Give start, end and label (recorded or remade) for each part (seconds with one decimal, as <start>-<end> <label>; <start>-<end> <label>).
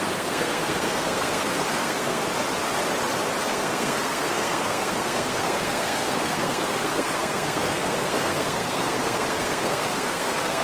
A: 0.0-2.2 remade; 2.2-3.4 recorded; 3.4-10.6 remade